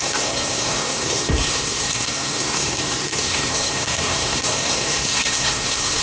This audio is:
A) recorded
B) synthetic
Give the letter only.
B